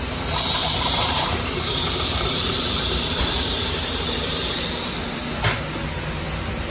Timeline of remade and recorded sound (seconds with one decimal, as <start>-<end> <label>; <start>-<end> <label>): 0.0-0.6 recorded; 0.6-4.6 remade; 4.6-6.7 recorded